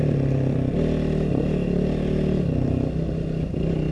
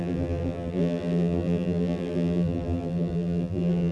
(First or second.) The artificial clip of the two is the second